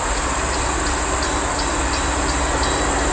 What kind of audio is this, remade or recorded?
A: recorded